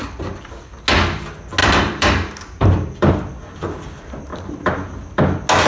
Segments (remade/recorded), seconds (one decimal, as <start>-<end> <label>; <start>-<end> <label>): 0.0-1.6 recorded; 1.6-3.1 remade; 3.1-4.3 recorded; 4.3-5.2 remade; 5.2-5.7 recorded